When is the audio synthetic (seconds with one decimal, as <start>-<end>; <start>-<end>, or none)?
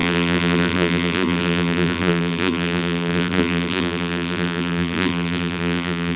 0.0-6.2